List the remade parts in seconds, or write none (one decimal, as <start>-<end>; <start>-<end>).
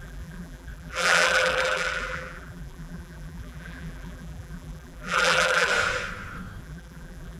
0.0-5.7; 6.6-7.4